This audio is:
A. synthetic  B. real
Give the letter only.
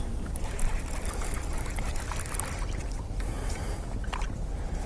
B